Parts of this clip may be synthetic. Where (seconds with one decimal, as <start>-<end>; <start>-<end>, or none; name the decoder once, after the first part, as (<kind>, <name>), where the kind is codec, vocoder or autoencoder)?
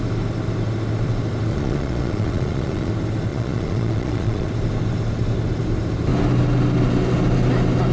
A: 1.5-2.9 (vocoder, Vocos); 3.3-4.5